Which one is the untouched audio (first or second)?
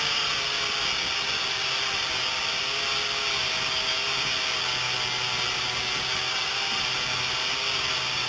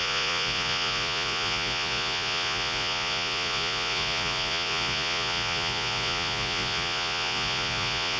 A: first